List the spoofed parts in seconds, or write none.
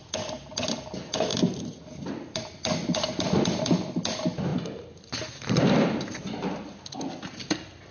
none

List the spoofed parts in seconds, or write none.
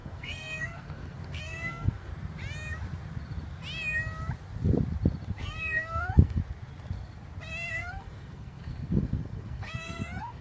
0.0-2.1; 5.3-6.4; 7.7-10.4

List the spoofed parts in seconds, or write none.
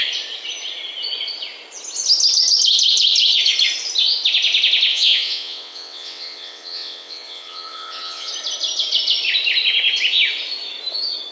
4.9-8.3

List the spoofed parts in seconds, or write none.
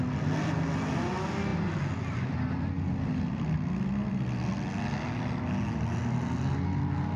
none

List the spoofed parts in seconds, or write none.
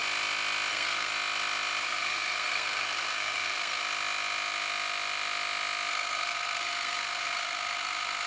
0.7-1.1; 1.8-3.8; 5.9-8.3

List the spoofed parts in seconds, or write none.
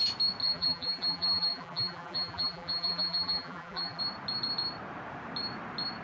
0.4-4.0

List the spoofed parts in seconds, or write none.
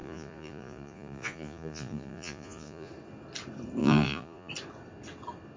0.0-2.9; 3.8-4.5